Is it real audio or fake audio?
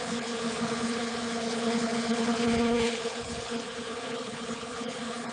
fake